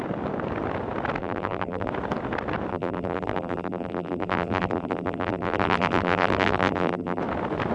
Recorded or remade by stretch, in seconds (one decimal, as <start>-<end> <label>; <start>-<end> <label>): 0.0-1.2 recorded; 1.2-1.9 remade; 1.9-2.7 recorded; 2.7-7.2 remade; 7.2-7.7 recorded